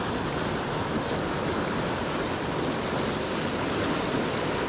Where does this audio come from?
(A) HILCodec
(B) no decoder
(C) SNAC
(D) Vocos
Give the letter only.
B